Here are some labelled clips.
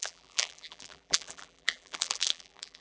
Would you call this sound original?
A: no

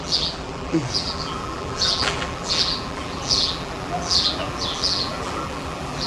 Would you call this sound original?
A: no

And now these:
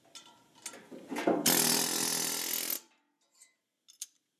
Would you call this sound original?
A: yes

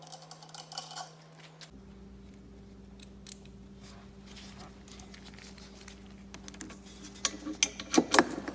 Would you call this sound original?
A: yes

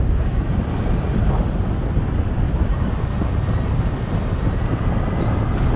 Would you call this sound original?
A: yes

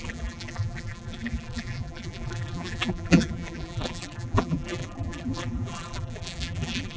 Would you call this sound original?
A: no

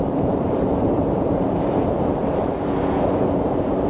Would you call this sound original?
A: no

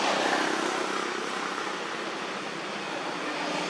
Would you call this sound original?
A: yes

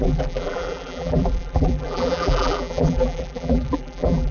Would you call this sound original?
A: no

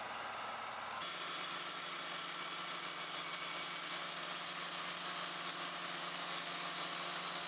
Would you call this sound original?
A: yes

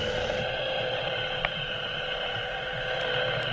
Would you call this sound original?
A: no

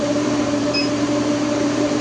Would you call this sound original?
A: no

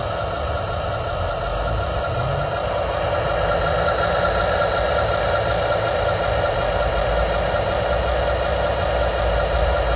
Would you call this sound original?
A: yes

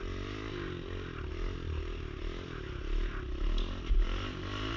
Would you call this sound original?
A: yes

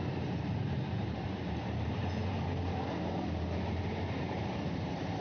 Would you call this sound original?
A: no